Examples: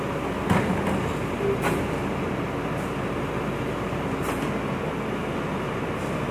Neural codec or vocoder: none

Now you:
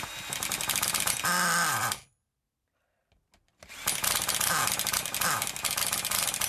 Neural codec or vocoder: none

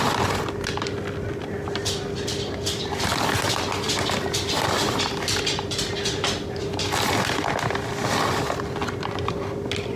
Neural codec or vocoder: none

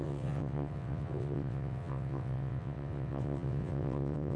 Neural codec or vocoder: vocoder, WaveNeXt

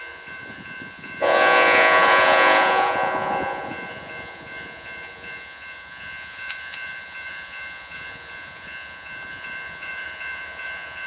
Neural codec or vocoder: vocoder, Vocos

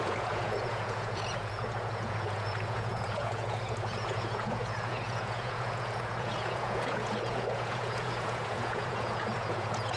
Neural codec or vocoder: vocoder, Vocos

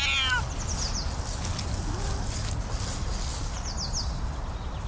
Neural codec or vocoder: none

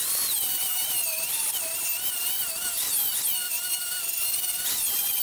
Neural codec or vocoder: none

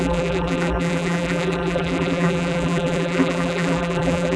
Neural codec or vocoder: vocoder, BigVGAN v2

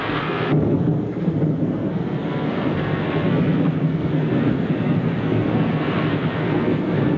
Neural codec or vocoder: codec, SNAC